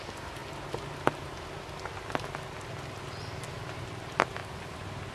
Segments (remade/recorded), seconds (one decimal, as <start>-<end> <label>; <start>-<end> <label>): 0.0-5.1 recorded